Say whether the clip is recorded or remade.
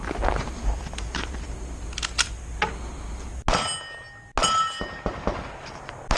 recorded